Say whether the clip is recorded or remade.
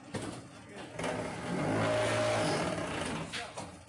recorded